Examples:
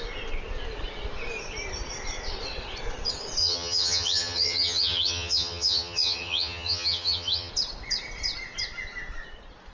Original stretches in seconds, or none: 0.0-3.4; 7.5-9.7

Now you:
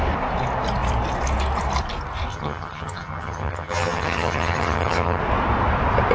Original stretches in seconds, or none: 0.0-2.3; 5.2-6.1

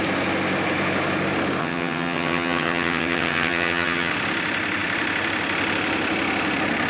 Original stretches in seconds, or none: 0.0-1.6; 4.1-6.9

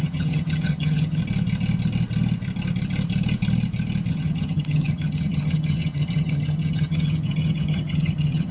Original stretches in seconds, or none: 1.2-4.1

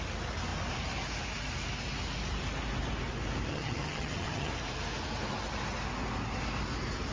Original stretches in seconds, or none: 0.0-3.5; 4.5-7.1

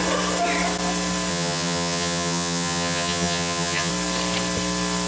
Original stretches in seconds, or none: 0.0-1.3; 3.9-5.1

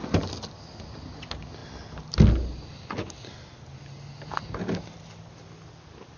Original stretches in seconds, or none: 0.0-6.2

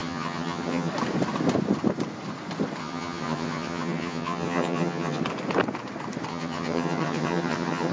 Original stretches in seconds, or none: 0.9-2.8; 5.2-6.3